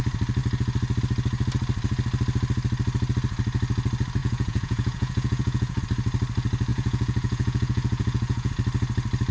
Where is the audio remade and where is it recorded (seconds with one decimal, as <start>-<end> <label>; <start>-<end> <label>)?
0.0-4.2 recorded; 4.2-5.8 remade; 5.8-6.7 recorded; 6.7-8.5 remade; 8.5-9.3 recorded